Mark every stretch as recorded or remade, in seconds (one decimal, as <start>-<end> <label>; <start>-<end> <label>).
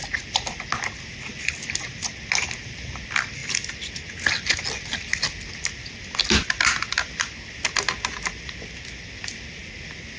0.0-10.2 recorded